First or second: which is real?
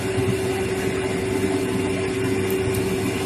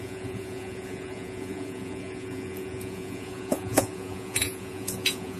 first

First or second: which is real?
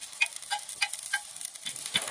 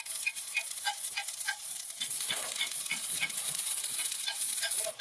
first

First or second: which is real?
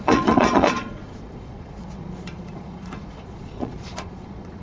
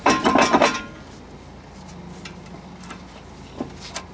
second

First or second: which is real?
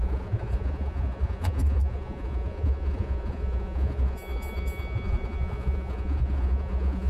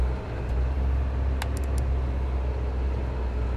second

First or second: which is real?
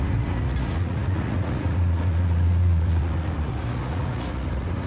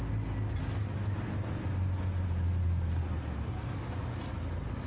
second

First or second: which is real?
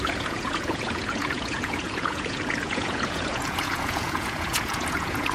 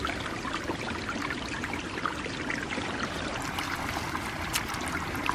second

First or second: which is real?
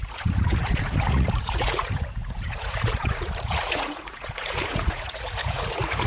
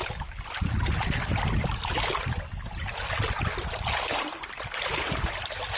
second